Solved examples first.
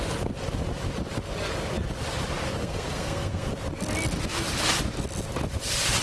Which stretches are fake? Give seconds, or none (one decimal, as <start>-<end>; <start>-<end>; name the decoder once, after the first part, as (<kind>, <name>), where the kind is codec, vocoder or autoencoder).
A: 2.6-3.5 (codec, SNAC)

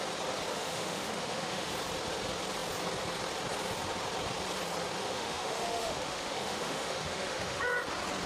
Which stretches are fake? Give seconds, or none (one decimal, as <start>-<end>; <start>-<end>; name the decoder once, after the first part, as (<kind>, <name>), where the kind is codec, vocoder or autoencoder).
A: 0.5-1.7 (autoencoder, DAC-VAE); 5.0-7.6

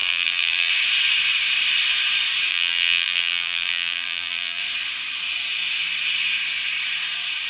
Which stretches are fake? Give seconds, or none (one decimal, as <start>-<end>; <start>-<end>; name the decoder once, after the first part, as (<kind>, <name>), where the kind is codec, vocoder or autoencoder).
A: 0.0-0.7 (vocoder, BigVGAN v2); 2.5-4.6